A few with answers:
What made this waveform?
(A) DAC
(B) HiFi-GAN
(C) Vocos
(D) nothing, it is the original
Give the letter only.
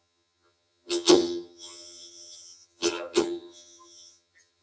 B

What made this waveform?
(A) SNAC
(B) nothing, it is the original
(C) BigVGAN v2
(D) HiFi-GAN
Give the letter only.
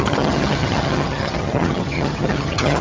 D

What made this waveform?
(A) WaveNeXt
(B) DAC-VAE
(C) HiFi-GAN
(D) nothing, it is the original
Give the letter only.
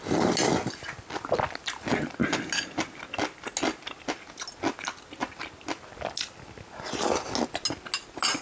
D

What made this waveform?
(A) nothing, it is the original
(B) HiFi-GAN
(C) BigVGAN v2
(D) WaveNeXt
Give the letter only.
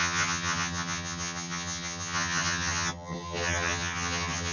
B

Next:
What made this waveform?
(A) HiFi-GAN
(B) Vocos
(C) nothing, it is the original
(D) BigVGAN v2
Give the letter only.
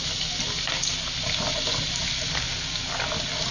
C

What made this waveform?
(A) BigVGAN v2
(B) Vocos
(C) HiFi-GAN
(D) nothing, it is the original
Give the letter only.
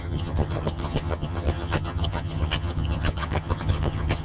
C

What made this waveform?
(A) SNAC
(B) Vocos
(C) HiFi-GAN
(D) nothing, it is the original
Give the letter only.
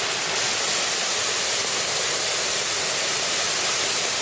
D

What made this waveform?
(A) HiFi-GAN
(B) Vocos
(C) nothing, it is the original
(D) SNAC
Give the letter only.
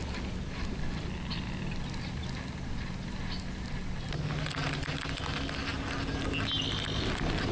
C